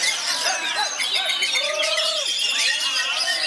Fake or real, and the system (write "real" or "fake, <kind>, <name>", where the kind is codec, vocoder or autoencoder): fake, vocoder, BigVGAN v2